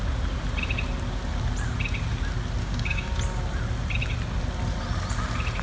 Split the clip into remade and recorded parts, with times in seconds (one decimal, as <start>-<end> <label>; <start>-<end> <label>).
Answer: 0.0-2.6 recorded; 2.6-3.1 remade; 3.1-5.6 recorded